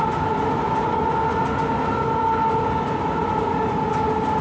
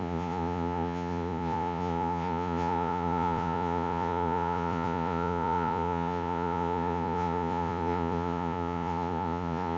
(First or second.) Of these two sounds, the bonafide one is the first